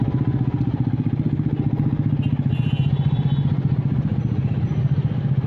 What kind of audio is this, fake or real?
real